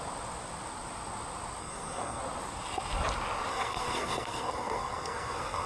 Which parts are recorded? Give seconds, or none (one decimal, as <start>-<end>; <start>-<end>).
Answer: 0.0-1.6; 2.2-3.5